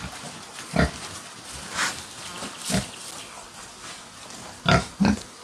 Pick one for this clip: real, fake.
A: real